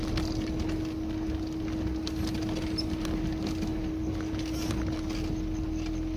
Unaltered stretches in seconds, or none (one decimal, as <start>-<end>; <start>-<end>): 0.0-6.2